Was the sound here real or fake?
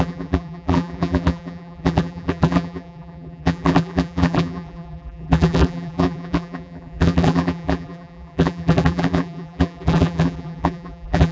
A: fake